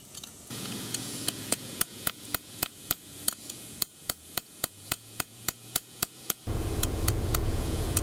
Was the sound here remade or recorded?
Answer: remade